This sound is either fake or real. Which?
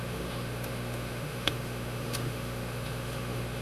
fake